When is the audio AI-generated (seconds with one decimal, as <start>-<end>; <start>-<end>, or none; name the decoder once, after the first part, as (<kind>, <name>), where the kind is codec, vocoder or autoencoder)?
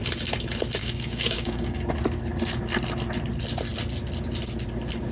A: 0.8-1.9 (codec, DAC)